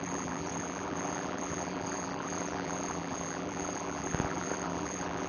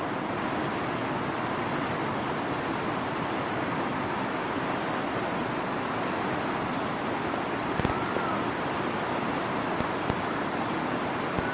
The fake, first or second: first